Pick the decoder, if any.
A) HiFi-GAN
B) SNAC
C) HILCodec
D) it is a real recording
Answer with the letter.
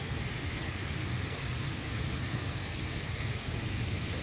B